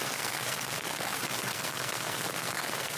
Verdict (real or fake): fake